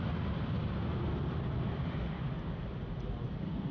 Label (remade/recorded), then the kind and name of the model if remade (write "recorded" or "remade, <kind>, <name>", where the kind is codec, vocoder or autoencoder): recorded